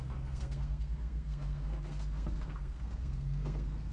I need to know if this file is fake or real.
fake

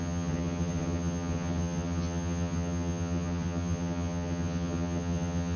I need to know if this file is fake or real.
fake